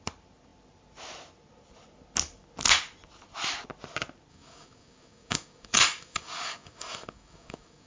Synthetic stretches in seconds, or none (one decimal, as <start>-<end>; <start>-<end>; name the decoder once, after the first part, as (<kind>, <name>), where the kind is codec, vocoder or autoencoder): 4.3-7.9 (codec, DAC)